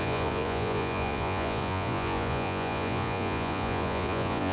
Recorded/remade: remade